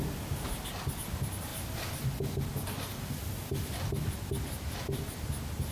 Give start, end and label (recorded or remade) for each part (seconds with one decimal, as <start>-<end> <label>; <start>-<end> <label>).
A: 0.0-5.7 recorded